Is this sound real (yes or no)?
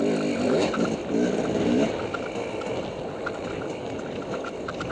yes